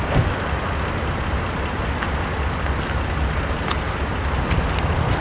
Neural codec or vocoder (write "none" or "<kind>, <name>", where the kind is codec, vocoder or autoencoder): none